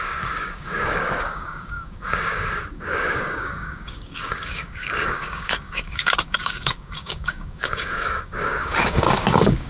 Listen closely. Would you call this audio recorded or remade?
remade